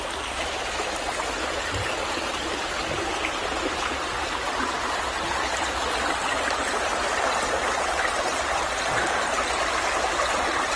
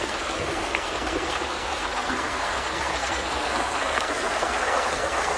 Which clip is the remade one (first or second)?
second